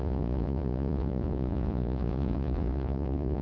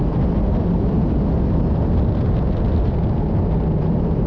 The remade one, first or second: first